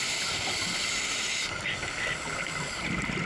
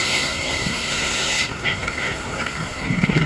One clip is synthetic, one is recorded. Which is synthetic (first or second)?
second